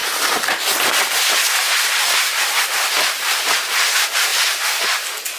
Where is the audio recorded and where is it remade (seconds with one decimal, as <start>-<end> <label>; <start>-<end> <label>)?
0.0-5.4 recorded